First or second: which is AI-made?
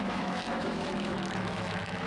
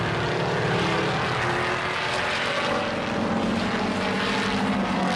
first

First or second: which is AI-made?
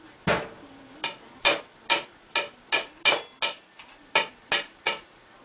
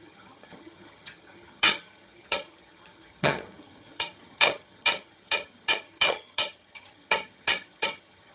second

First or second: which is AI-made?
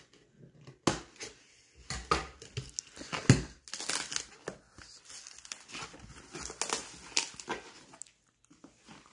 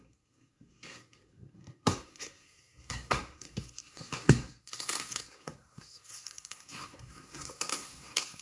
second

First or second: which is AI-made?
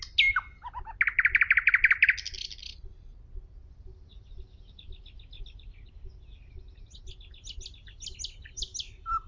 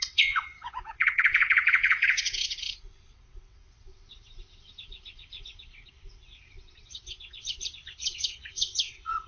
second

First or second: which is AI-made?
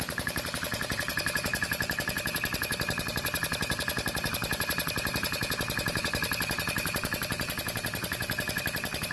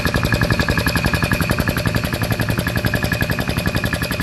first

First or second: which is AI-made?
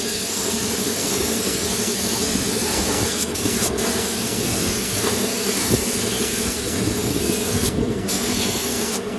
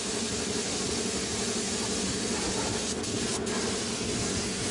first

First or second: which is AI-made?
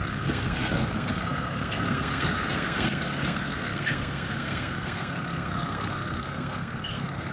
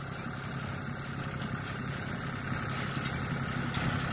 first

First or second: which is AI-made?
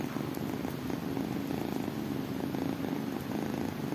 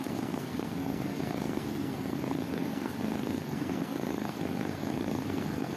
second